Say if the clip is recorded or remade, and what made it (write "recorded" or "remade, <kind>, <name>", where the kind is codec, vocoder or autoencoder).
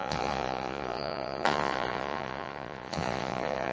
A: remade, vocoder, Vocos